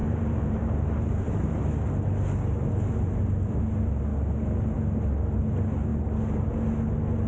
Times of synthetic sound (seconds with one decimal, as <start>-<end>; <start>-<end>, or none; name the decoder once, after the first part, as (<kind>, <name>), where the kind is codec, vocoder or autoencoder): 0.0-1.6 (vocoder, BigVGAN v2)